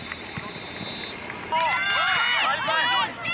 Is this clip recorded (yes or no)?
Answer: yes